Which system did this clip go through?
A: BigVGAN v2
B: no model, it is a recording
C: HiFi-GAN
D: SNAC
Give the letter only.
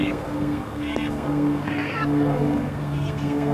D